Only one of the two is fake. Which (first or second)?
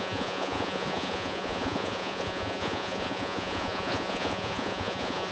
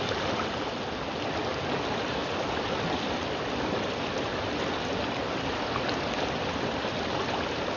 first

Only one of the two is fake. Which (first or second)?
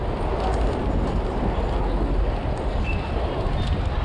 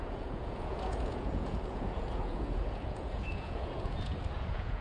second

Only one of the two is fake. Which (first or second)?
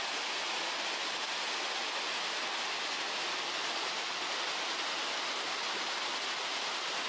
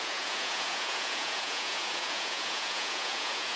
second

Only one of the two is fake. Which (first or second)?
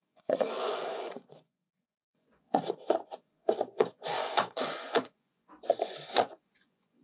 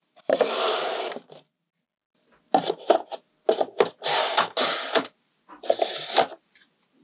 first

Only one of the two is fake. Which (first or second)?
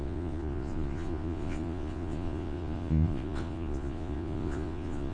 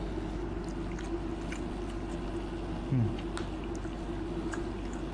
first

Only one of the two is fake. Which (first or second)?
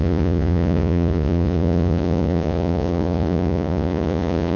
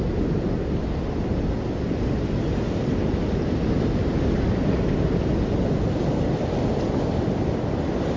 first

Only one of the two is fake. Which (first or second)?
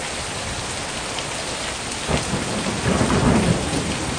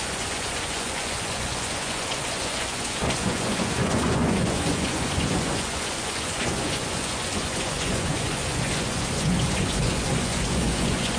second